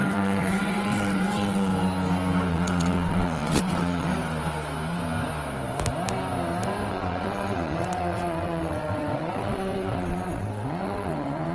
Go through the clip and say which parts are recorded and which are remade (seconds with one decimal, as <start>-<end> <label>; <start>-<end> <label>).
0.0-1.7 remade; 1.7-2.5 recorded; 2.5-4.1 remade; 4.1-6.9 recorded; 6.9-11.5 remade